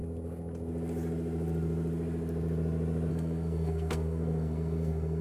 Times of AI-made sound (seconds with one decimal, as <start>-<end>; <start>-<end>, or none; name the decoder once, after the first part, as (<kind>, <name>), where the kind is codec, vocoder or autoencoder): 3.1-5.2 (codec, SNAC)